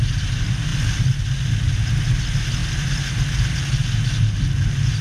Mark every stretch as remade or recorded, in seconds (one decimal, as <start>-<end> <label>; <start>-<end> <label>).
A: 0.0-5.0 recorded